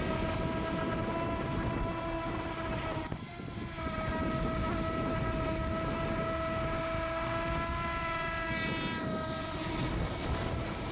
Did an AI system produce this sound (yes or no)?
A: no